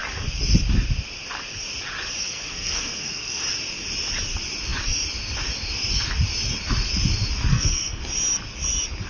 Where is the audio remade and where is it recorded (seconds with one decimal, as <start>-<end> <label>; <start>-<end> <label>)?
0.0-2.2 recorded; 2.2-3.4 remade; 3.4-7.5 recorded; 7.5-8.0 remade; 8.0-9.1 recorded